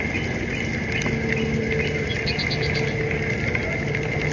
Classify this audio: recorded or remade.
recorded